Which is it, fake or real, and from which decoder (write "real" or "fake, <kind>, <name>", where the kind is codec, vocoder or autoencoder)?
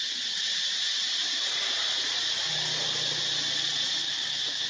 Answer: real